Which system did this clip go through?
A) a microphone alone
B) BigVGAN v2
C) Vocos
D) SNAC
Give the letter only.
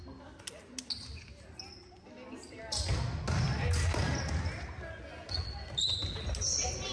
A